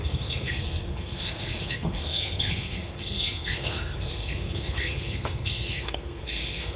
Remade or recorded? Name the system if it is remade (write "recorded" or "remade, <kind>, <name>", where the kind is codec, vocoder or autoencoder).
remade, codec, SNAC